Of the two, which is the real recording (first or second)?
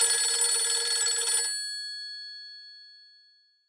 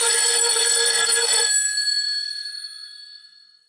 first